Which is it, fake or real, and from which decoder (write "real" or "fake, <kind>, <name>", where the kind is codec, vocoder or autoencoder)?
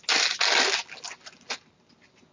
real